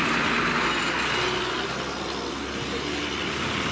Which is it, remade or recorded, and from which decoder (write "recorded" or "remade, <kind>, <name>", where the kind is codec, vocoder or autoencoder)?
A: recorded